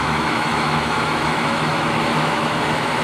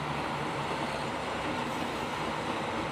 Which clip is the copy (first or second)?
first